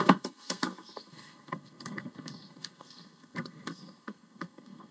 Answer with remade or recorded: remade